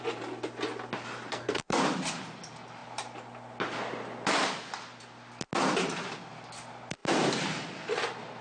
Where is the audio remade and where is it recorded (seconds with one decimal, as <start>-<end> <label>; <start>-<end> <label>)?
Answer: 0.0-1.3 recorded; 1.3-1.8 remade; 1.8-8.4 recorded